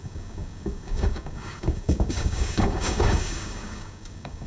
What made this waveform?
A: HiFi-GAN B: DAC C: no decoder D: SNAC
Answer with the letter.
B